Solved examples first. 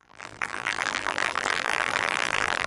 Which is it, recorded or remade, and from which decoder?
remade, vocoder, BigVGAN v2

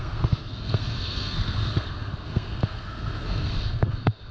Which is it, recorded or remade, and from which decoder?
remade, codec, SNAC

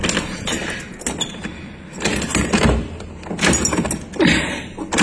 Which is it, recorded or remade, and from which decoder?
recorded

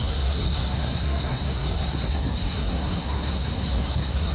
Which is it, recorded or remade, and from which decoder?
remade, codec, SNAC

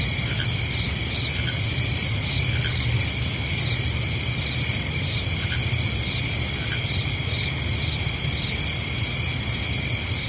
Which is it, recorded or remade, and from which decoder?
recorded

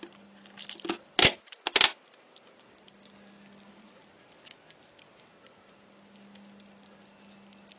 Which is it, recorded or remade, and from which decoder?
recorded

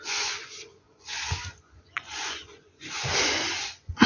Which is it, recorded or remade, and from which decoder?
remade, vocoder, Vocos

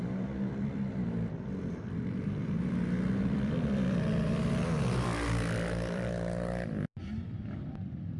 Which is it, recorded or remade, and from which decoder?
remade, vocoder, BigVGAN v2